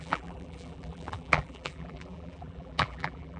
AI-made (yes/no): yes